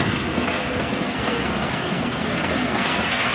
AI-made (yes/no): yes